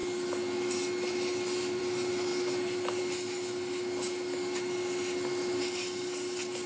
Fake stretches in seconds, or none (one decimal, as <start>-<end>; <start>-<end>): none